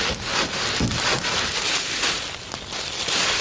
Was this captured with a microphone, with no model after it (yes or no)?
yes